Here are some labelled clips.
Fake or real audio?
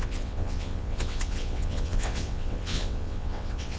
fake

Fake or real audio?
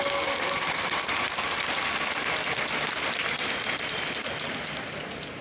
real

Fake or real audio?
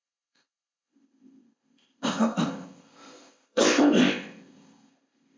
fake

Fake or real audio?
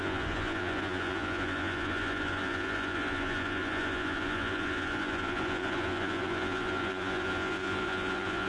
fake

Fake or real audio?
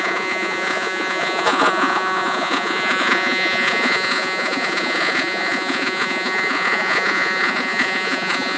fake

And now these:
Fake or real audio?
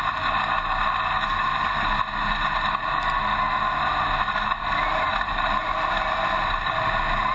real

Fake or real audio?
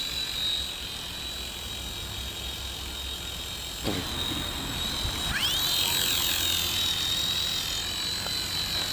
real